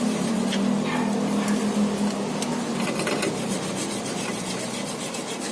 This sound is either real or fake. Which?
real